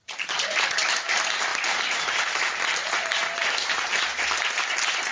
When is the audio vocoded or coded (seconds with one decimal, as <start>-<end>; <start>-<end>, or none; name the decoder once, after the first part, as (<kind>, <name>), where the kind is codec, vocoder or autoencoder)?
0.0-5.1 (vocoder, BigVGAN v2)

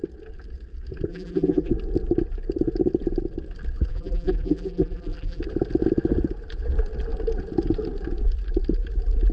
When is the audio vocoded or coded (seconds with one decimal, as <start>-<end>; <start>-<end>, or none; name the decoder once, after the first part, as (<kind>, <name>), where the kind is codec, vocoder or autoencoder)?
1.1-1.7 (vocoder, BigVGAN v2); 3.9-5.4

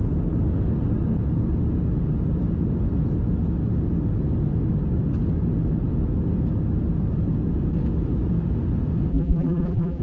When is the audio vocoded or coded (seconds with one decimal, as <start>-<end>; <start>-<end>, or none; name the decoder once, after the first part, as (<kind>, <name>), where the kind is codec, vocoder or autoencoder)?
9.1-10.0 (vocoder, BigVGAN v2)

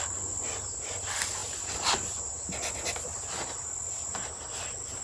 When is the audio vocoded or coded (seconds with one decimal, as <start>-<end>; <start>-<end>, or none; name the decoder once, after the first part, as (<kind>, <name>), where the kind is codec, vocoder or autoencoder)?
none